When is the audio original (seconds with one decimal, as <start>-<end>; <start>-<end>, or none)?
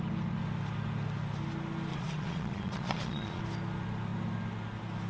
0.0-1.9; 3.4-5.1